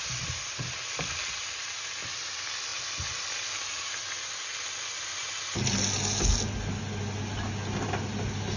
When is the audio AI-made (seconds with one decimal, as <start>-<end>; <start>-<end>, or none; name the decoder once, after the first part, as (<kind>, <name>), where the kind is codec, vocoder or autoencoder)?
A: none